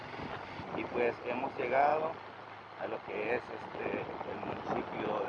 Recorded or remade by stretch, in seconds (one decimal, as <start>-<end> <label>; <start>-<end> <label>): 0.0-5.3 recorded